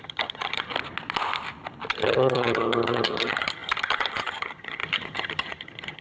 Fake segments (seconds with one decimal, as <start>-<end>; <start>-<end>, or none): 0.0-0.7; 1.9-6.0